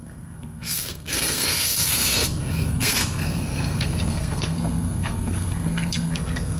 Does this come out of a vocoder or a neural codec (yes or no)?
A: yes